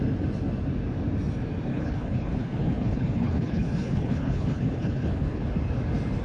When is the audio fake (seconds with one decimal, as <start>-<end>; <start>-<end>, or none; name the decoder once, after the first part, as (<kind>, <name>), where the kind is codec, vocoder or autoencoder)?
1.7-5.4 (codec, HILCodec)